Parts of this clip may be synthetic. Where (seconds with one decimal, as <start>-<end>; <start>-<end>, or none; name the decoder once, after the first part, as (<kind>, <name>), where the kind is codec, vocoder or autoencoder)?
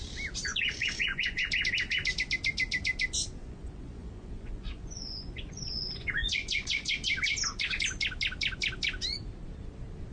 0.5-1.5 (vocoder, Vocos); 3.4-6.9